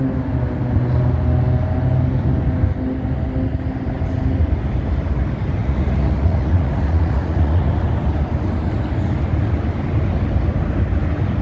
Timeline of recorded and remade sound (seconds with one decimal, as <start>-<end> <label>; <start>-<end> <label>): 0.0-5.6 recorded; 5.6-7.7 remade; 7.7-11.4 recorded

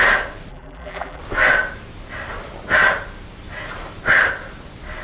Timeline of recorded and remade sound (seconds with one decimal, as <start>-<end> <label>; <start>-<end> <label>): 0.0-0.5 recorded; 0.5-1.2 remade; 1.2-5.0 recorded

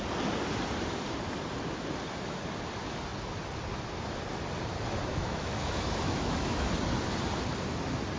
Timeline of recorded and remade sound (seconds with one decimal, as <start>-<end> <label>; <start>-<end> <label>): 0.0-5.1 recorded; 5.1-6.7 remade; 6.7-8.2 recorded

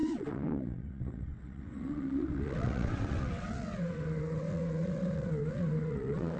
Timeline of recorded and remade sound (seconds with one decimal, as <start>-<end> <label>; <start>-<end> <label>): 0.0-6.4 remade

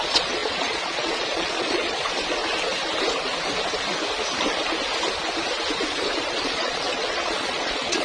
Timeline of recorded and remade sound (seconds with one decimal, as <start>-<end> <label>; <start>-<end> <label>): 0.0-2.4 remade; 2.4-6.4 recorded; 6.4-8.0 remade

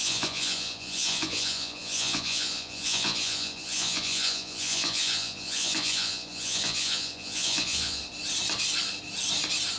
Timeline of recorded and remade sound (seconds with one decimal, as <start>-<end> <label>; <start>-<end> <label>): 0.0-8.0 remade; 8.0-9.8 recorded